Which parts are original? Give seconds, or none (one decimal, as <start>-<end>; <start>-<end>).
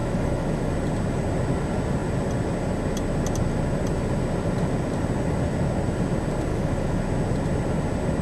0.7-6.5; 7.0-8.2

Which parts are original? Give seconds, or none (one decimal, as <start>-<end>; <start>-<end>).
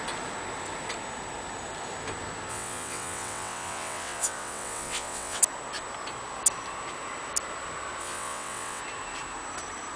0.0-2.5; 5.4-8.0; 8.8-10.0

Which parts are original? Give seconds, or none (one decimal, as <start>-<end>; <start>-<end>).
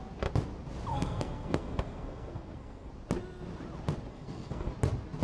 0.0-0.9; 2.9-4.1; 4.7-5.2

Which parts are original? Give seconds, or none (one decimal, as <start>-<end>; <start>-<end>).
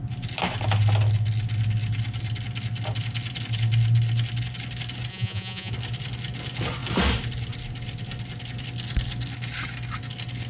0.0-5.1; 5.7-10.5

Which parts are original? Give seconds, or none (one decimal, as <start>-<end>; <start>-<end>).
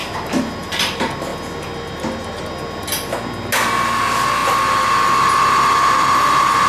0.0-6.7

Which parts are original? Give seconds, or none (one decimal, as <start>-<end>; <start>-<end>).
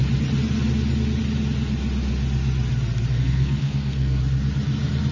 0.0-3.1; 4.2-5.1